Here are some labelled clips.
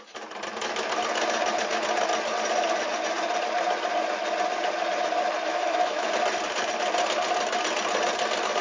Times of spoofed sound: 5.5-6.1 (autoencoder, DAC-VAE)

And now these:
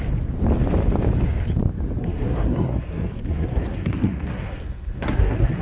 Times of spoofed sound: 2.0-5.6 (codec, SNAC)

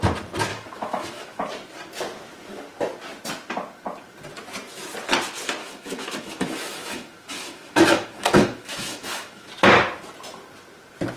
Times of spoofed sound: 0.5-1.4 (autoencoder, DAC-VAE); 5.6-9.5